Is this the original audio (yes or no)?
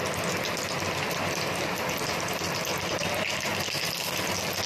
yes